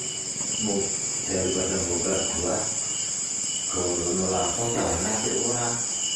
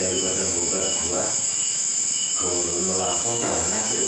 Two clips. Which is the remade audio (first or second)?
second